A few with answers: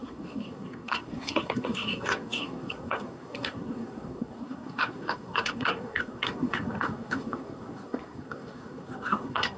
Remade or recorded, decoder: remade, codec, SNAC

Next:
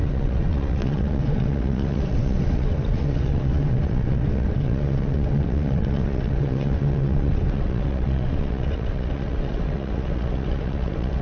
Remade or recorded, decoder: remade, vocoder, WaveNeXt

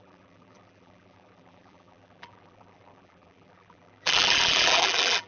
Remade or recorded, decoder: remade, vocoder, BigVGAN v2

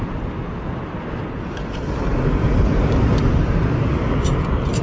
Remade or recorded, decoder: recorded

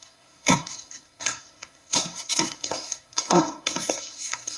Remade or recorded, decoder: remade, codec, SNAC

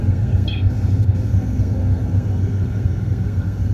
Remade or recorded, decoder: remade, codec, SNAC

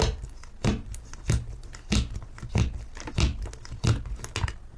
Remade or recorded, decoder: recorded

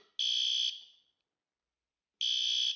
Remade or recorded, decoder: recorded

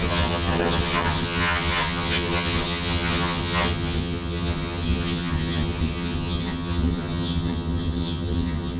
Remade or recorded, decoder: remade, vocoder, HiFi-GAN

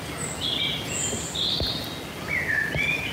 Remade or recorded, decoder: recorded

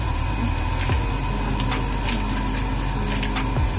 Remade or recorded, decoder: recorded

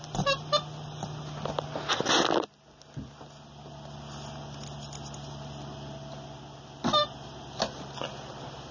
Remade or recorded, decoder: recorded